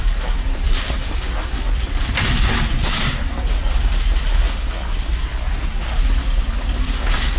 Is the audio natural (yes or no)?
yes